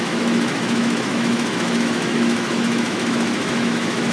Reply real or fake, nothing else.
fake